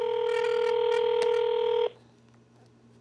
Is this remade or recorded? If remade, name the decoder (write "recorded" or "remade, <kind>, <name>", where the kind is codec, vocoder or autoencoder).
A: recorded